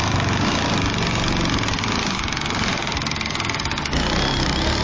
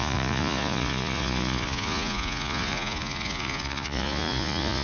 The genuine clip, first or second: first